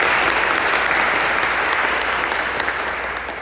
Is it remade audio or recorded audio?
recorded